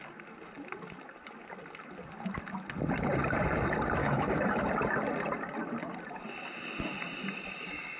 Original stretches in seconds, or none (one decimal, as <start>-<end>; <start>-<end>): 0.0-4.0; 4.6-8.0